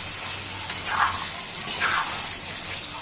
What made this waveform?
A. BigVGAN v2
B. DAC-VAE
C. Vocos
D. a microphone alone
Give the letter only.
D